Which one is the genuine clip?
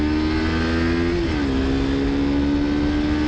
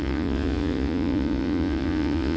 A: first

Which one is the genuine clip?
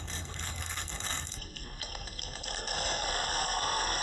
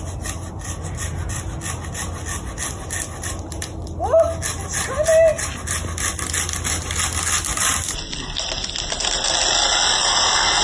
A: second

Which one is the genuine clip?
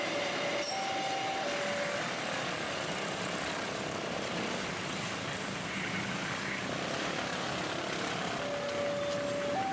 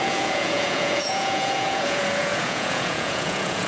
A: first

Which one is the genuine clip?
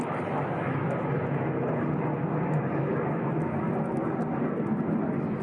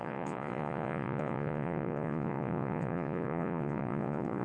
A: first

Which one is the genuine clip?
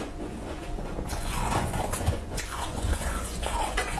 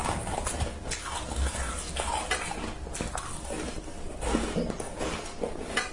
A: second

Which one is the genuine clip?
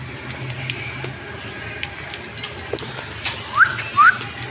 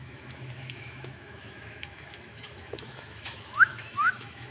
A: first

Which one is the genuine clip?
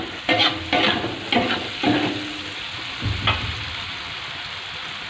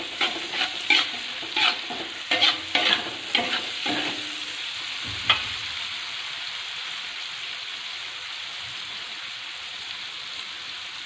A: first